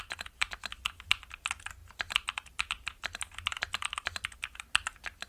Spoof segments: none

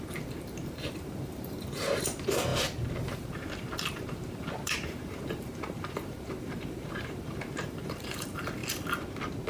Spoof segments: 0.0-8.6 (vocoder, BigVGAN v2)

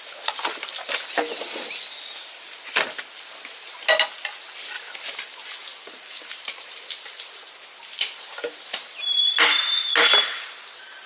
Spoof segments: 5.7-7.2 (vocoder, BigVGAN v2)